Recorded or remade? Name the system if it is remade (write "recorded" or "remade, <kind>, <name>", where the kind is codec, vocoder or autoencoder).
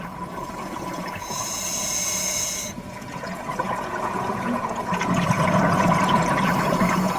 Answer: remade, vocoder, Vocos